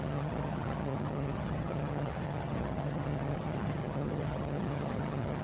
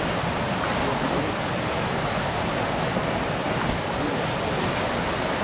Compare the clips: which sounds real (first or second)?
second